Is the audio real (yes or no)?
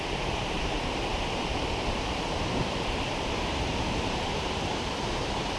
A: no